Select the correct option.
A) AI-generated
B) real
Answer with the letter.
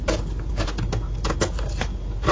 B